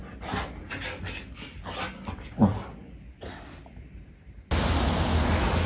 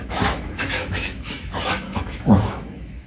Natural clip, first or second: first